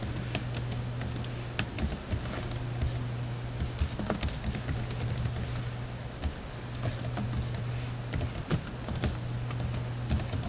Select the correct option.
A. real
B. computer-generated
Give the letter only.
A